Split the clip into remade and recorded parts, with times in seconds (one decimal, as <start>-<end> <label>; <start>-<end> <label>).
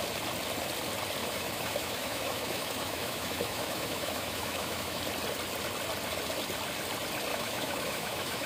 0.0-1.2 recorded; 1.2-5.0 remade; 5.0-7.3 recorded; 7.3-8.5 remade